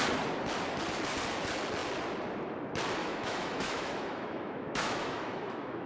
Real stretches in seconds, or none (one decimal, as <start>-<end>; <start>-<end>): 0.0-3.0